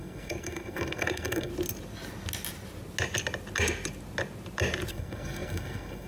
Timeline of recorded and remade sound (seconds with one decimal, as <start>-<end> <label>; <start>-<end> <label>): 0.0-1.5 remade; 1.5-4.9 recorded; 4.9-6.1 remade